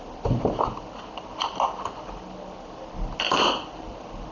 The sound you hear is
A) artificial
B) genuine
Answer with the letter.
B